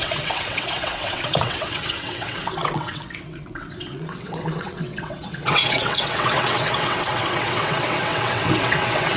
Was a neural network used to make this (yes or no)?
yes